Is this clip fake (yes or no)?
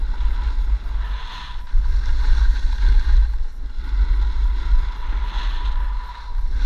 no